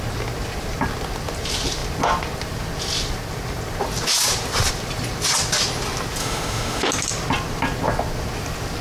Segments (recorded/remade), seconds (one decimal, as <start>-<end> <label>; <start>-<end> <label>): 0.0-6.2 recorded; 6.2-6.9 remade; 6.9-8.8 recorded